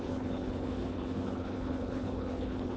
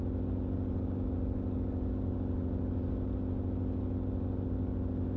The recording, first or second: second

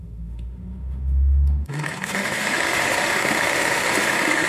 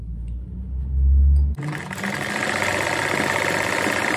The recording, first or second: second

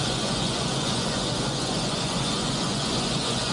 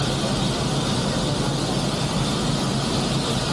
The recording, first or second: second